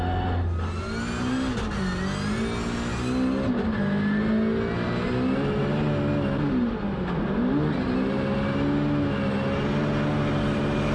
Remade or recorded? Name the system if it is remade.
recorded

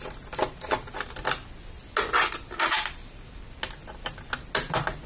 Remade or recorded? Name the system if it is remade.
recorded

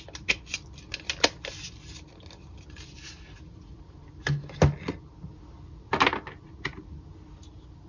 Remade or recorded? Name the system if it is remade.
recorded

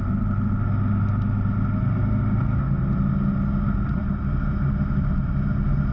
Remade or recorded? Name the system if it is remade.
recorded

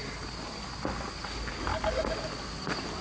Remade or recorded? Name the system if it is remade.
recorded